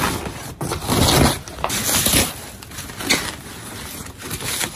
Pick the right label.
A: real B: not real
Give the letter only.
A